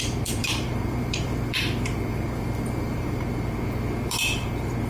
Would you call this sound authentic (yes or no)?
no